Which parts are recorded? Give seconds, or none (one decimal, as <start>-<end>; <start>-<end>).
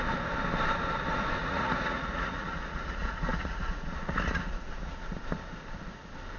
0.0-1.4; 5.2-6.4